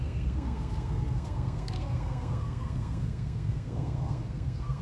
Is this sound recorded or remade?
remade